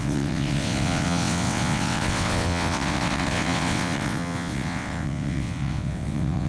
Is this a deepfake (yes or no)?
yes